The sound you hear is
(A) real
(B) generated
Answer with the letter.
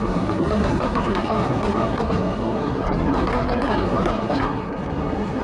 B